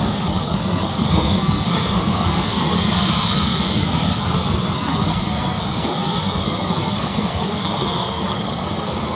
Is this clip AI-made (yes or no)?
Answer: yes